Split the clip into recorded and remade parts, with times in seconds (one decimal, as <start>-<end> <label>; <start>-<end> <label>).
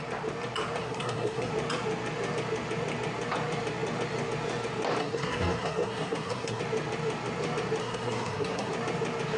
0.0-0.8 recorded; 0.8-1.5 remade; 1.5-5.0 recorded; 5.0-6.6 remade; 6.6-7.8 recorded; 7.8-8.7 remade; 8.7-9.4 recorded